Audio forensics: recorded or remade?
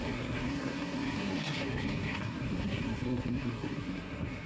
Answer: remade